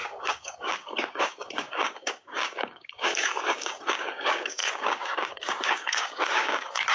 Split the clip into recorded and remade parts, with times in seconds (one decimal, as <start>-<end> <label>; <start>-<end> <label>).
0.0-6.9 remade